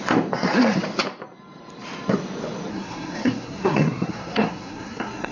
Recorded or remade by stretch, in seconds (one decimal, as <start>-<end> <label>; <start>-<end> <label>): 0.0-2.7 recorded; 2.7-5.3 remade